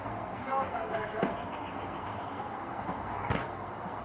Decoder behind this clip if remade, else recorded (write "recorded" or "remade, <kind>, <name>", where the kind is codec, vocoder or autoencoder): remade, codec, SNAC